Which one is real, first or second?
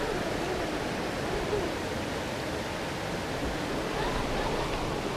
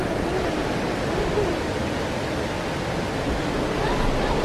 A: second